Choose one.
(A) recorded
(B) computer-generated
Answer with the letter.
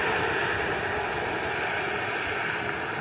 A